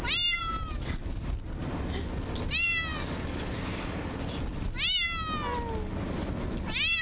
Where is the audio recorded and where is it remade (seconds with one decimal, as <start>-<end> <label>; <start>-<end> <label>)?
0.0-0.4 recorded; 0.4-1.2 remade; 1.2-7.0 recorded